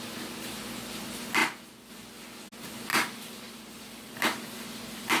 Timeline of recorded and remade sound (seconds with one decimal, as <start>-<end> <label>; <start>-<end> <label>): 0.0-2.9 recorded; 2.9-4.1 remade; 4.1-5.2 recorded